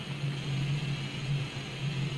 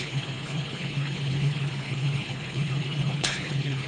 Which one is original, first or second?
first